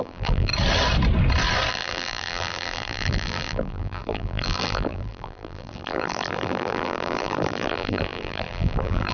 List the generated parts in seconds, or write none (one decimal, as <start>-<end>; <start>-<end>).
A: 0.0-0.5; 1.7-9.1